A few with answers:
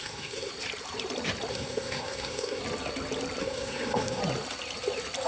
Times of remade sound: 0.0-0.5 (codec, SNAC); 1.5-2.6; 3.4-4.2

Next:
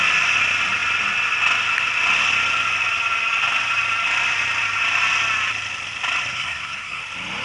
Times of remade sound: 6.3-7.0 (codec, SNAC)